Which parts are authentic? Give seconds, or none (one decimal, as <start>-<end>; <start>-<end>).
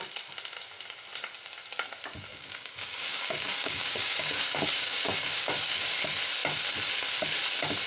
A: 0.0-2.3; 6.0-7.9